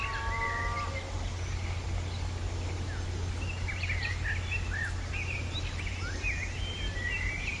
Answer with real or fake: real